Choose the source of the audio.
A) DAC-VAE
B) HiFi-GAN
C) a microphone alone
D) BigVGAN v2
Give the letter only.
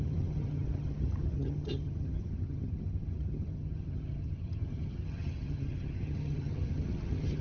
B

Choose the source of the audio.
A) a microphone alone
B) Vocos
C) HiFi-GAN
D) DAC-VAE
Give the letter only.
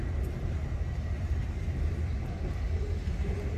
A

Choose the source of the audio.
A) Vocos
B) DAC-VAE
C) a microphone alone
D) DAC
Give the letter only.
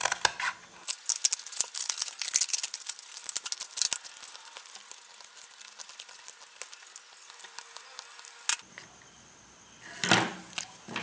C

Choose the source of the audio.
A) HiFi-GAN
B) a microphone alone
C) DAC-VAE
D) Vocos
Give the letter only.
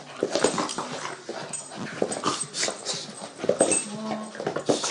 B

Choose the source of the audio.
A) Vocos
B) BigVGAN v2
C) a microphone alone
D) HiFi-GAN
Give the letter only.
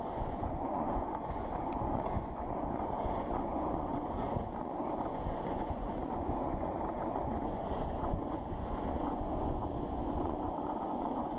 A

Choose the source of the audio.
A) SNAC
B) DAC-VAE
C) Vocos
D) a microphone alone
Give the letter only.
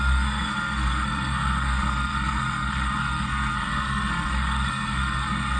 A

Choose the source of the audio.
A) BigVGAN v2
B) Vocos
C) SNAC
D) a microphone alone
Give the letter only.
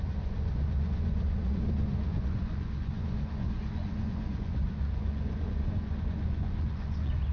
B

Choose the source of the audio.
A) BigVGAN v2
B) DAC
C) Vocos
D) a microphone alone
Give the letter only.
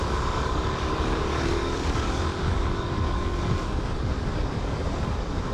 B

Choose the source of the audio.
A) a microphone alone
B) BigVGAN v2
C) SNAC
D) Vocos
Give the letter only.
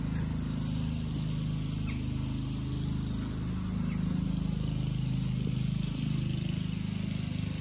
A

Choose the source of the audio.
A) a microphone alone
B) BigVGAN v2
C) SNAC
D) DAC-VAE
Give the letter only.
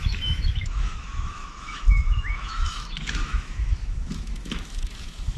D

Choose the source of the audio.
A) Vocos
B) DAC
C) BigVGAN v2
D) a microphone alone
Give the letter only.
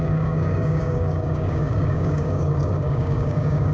B